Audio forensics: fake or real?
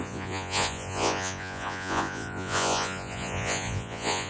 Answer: fake